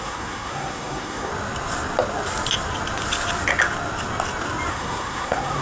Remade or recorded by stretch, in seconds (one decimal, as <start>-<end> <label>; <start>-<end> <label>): 0.0-1.3 remade; 1.3-4.7 recorded; 4.7-5.6 remade